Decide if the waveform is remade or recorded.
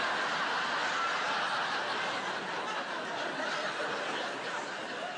recorded